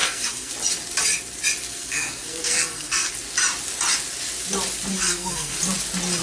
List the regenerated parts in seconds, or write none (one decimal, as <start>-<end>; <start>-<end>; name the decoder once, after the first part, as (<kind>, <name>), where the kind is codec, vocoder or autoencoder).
0.0-0.5 (codec, SNAC); 1.7-3.1; 4.9-5.6